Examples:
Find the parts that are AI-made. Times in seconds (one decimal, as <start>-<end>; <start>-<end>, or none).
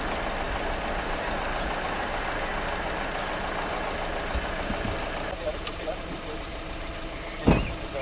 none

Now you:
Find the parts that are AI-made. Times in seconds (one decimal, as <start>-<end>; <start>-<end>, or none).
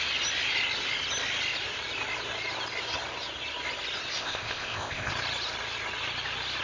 4.2-5.1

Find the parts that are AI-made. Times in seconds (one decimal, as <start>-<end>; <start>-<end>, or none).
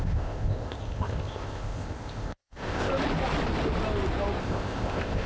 0.0-2.9; 4.4-5.3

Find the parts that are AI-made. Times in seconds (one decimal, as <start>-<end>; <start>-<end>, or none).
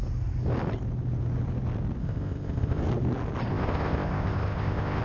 2.0-2.8; 3.5-5.0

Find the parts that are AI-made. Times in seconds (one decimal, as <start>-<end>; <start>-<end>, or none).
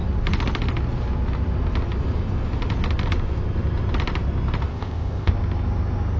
4.7-5.3